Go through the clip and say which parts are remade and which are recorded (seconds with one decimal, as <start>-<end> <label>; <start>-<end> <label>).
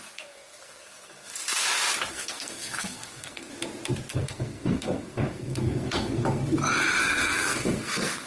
0.0-1.3 remade; 1.3-2.1 recorded; 2.1-3.5 remade; 3.5-4.1 recorded; 4.1-6.4 remade; 6.4-7.0 recorded; 7.0-8.3 remade